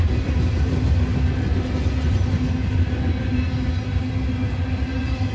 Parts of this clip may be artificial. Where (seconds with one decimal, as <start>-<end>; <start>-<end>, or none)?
none